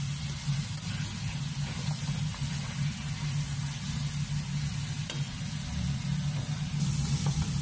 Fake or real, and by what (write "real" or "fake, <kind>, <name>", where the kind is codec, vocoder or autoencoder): real